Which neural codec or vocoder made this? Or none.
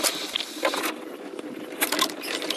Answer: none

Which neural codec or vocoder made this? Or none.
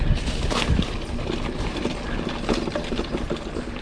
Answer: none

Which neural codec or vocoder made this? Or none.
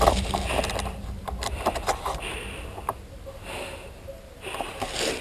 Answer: none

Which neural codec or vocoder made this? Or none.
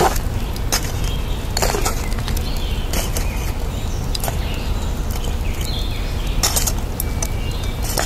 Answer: none